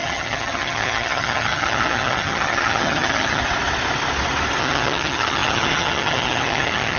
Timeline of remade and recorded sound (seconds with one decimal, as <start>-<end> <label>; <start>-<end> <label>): 0.0-3.4 remade; 3.4-4.6 recorded; 4.6-7.0 remade

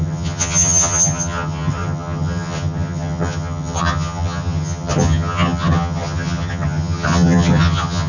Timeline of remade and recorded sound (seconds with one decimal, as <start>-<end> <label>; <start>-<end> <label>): 0.0-8.1 remade

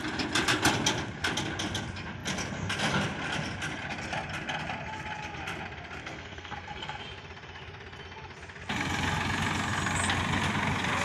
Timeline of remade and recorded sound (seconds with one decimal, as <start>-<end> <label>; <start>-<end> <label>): 0.0-6.0 recorded; 6.0-7.0 remade; 7.0-11.0 recorded

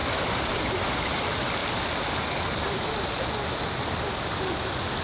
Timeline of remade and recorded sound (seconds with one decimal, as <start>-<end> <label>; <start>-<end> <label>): 0.0-1.2 remade; 1.2-5.0 recorded